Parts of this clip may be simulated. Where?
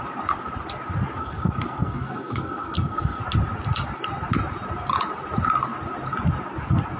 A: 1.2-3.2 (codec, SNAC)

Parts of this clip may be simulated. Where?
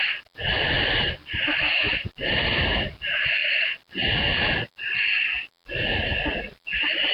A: 6.3-7.1 (vocoder, BigVGAN v2)